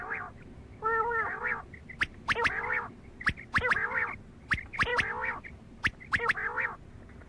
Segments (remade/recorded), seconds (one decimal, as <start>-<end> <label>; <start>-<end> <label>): 0.0-7.3 recorded